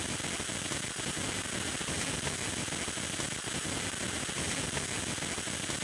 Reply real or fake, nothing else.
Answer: real